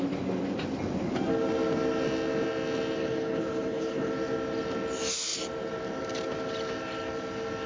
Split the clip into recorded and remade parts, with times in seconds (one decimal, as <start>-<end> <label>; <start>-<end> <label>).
0.0-3.0 recorded; 3.0-4.1 remade; 4.1-7.7 recorded